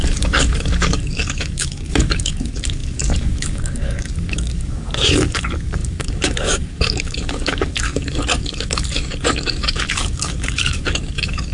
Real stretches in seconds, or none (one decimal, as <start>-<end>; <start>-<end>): none